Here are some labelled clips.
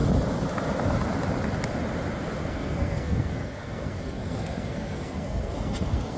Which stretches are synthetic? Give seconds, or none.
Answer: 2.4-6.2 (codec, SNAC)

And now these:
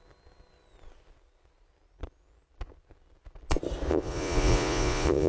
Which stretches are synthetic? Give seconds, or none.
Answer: 3.9-5.3 (vocoder, Vocos)

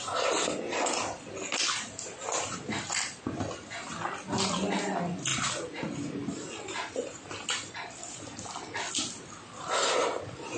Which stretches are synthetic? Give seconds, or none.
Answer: none

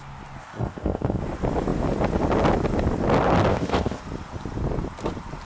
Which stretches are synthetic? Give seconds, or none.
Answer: 0.4-1.2 (codec, ZipCodec); 3.5-4.0

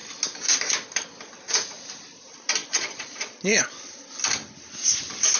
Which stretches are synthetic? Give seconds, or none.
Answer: 2.6-3.7 (vocoder, Vocos)

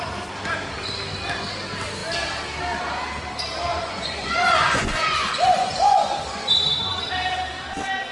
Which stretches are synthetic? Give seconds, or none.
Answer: 3.7-6.5 (vocoder, Vocos)

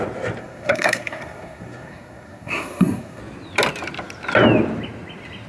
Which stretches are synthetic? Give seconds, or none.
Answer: 0.4-3.2 (codec, SNAC)

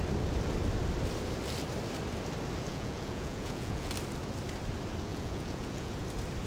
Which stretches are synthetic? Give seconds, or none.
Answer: 2.7-3.9 (vocoder, Vocos); 5.1-5.9